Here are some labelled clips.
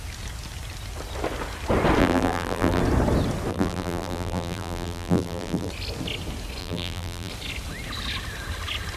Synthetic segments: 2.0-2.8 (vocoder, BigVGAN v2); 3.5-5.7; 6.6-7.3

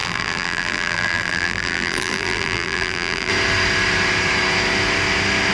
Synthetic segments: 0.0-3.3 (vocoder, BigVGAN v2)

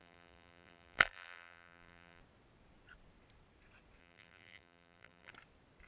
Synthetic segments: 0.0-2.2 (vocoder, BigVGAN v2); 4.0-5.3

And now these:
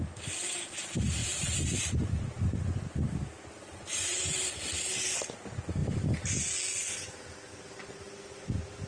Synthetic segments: 1.2-4.6 (vocoder, BigVGAN v2)

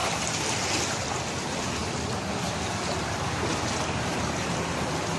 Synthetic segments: 0.0-0.6 (vocoder, BigVGAN v2); 1.8-5.2